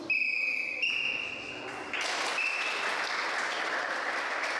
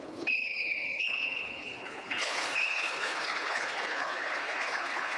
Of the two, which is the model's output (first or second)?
second